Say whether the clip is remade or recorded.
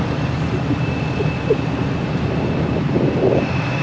remade